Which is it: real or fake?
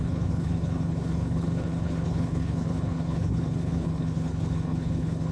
fake